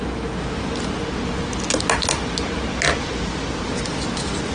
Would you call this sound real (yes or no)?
yes